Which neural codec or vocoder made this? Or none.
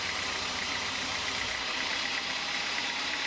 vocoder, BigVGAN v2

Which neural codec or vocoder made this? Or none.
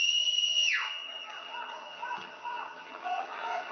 vocoder, HiFi-GAN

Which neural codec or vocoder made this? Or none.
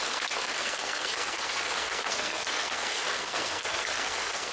codec, SNAC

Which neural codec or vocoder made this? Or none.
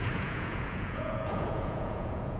vocoder, Vocos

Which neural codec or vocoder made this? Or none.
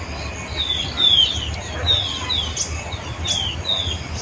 none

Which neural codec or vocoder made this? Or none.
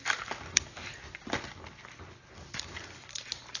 none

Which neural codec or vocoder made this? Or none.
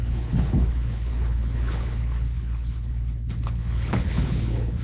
codec, HILCodec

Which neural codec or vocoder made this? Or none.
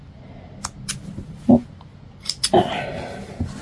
none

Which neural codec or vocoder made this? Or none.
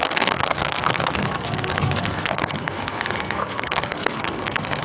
codec, SNAC